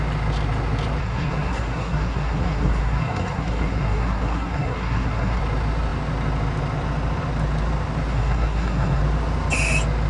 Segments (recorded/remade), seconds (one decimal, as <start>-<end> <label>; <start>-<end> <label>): 0.0-1.0 recorded; 1.0-5.4 remade; 5.4-8.1 recorded; 8.1-9.0 remade; 9.0-10.1 recorded